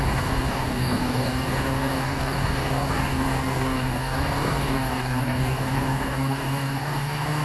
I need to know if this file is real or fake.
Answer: fake